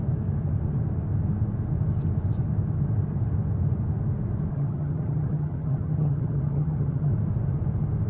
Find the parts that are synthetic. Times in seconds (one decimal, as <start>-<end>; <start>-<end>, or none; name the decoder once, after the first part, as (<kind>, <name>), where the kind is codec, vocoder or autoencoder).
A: 4.5-7.1 (vocoder, HiFi-GAN)

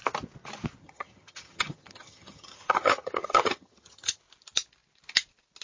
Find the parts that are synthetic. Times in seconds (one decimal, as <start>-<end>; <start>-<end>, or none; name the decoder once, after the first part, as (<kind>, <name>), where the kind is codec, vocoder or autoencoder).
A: 0.8-4.2 (vocoder, HiFi-GAN)